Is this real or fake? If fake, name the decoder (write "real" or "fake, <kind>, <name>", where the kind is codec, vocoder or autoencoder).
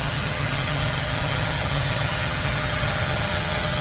fake, vocoder, HiFi-GAN